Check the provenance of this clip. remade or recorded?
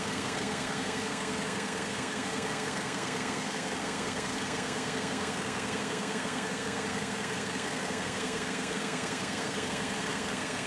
remade